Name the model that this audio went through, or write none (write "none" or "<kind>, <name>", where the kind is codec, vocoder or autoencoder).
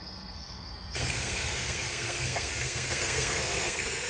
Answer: codec, SNAC